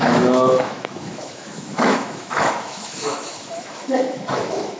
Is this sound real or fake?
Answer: fake